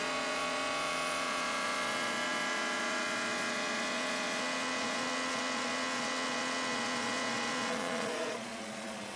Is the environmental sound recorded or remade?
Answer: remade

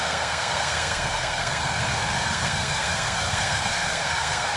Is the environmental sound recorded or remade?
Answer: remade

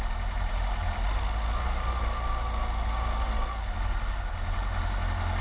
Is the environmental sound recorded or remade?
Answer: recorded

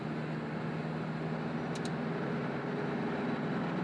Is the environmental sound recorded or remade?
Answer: recorded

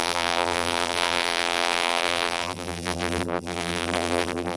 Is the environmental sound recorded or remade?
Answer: remade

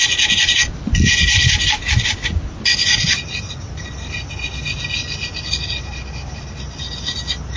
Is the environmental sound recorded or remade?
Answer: recorded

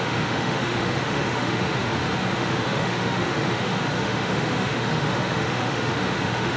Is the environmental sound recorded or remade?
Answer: remade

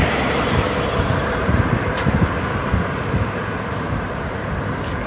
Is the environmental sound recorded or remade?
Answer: remade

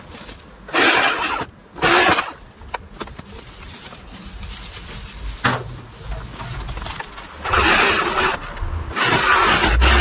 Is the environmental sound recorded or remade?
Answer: recorded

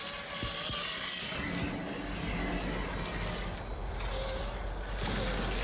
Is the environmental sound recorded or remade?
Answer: recorded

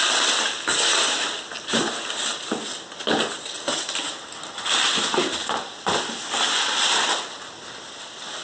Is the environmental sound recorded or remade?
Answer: recorded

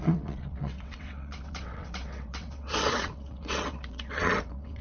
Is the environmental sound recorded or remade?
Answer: remade